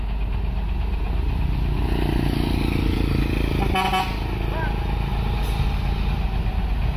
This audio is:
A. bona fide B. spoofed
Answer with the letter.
A